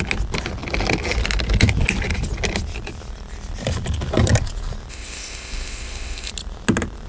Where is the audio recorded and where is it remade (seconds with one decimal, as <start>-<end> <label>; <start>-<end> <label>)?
0.0-4.9 recorded; 4.9-6.3 remade; 6.3-7.1 recorded